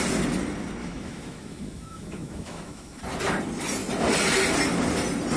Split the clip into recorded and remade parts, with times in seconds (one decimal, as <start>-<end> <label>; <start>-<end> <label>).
0.0-0.8 recorded; 0.8-3.0 remade; 3.0-5.4 recorded